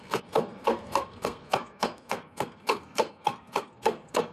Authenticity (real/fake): fake